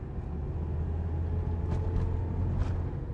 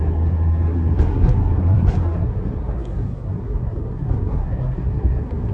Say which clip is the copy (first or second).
second